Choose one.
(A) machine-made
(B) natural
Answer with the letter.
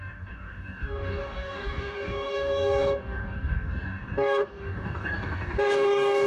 A